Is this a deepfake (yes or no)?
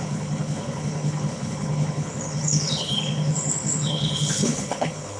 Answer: yes